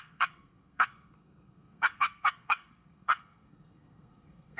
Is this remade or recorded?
remade